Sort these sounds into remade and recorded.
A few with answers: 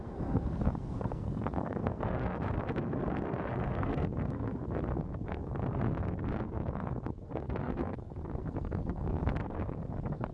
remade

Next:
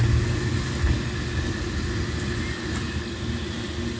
recorded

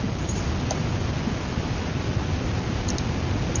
recorded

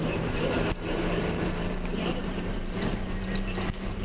remade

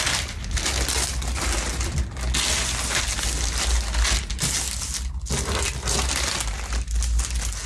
recorded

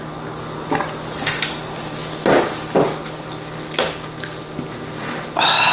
recorded